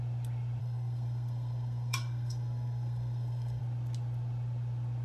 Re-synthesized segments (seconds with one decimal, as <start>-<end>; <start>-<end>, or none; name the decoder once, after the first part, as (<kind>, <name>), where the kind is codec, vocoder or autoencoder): 0.6-3.6 (codec, SNAC)